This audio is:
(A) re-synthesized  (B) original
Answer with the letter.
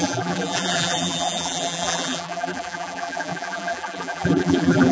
A